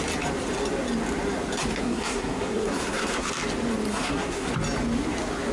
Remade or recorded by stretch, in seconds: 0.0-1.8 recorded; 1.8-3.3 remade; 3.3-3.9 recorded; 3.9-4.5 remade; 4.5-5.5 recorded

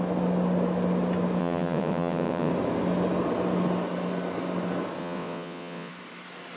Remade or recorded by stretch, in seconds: 0.0-1.4 recorded; 1.4-2.5 remade; 2.5-5.0 recorded; 5.0-5.9 remade; 5.9-6.6 recorded

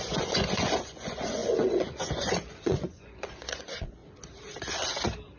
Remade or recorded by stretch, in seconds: 0.0-4.0 remade; 4.0-5.4 recorded

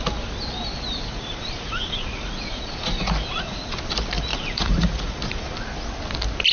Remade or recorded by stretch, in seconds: 0.0-1.1 recorded; 1.1-3.8 remade; 3.8-4.3 recorded; 4.3-5.5 remade; 5.5-6.5 recorded

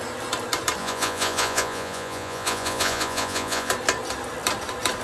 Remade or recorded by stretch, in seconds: 0.0-0.8 recorded; 0.8-3.7 remade; 3.7-5.0 recorded

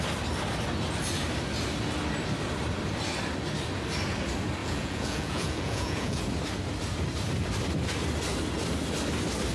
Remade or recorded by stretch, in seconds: 0.0-4.6 recorded; 4.6-6.2 remade; 6.2-9.5 recorded